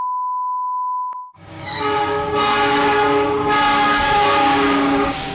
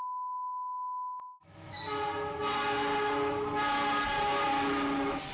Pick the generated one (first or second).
first